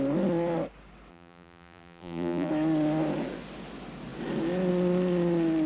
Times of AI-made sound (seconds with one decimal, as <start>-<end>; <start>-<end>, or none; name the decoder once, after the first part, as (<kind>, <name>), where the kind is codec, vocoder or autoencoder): 1.1-2.5 (vocoder, BigVGAN v2)